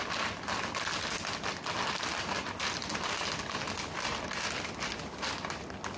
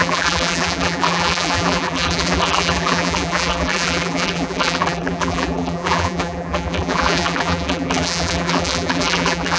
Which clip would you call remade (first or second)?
second